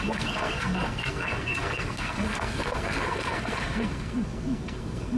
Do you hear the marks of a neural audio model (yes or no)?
yes